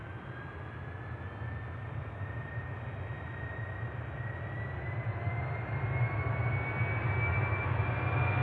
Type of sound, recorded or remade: recorded